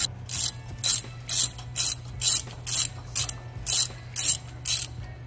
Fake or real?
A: real